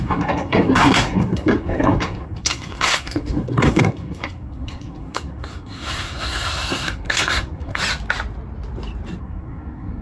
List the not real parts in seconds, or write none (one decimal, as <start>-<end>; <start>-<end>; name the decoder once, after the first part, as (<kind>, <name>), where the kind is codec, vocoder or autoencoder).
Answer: 0.0-7.8 (codec, SNAC); 9.2-10.0